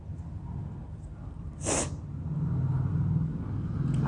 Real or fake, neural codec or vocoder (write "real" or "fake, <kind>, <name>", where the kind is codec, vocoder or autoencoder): real